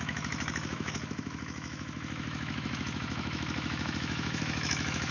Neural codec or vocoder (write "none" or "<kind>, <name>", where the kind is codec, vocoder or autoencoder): autoencoder, DAC-VAE